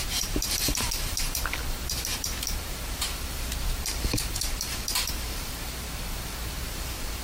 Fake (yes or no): yes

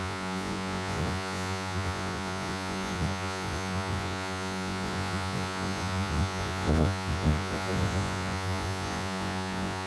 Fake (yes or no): yes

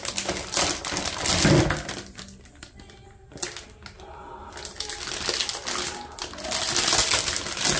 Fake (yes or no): no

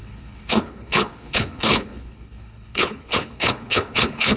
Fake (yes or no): yes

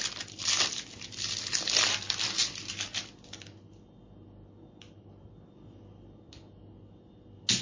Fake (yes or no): no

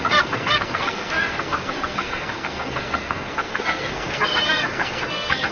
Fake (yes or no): yes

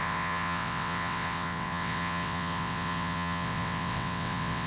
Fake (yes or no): yes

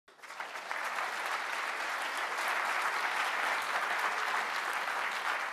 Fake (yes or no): no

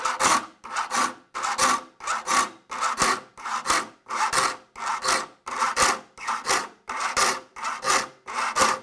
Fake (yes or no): no